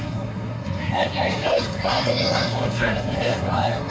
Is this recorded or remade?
remade